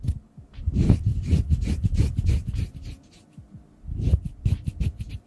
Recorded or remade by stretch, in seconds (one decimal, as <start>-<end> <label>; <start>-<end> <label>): 0.0-1.1 recorded; 1.1-1.7 remade; 1.7-5.3 recorded